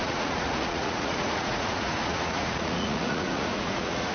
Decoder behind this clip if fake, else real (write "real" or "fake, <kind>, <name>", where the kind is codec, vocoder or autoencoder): fake, vocoder, Vocos